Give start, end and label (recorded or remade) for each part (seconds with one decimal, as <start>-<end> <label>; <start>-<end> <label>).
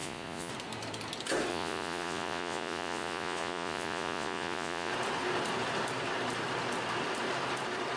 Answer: 0.0-0.5 remade; 0.5-1.5 recorded; 1.5-4.9 remade; 4.9-8.0 recorded